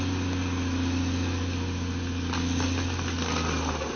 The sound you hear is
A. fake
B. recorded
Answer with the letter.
B